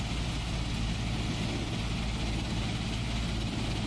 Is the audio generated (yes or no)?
no